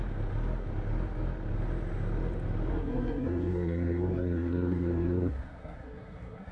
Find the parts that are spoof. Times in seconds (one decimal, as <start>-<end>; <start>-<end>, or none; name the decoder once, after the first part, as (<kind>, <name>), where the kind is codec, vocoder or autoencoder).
2.7-6.5 (codec, SNAC)